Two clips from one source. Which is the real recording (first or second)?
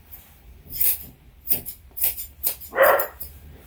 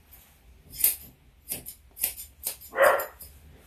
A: second